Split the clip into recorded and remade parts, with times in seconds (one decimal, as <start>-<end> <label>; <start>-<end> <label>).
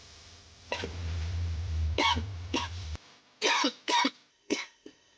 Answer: 0.0-4.3 recorded; 4.3-5.2 remade